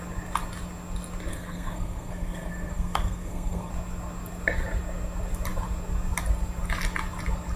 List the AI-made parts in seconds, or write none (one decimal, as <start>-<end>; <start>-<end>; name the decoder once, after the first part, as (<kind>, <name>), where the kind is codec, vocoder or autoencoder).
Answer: 1.3-3.7 (codec, SNAC)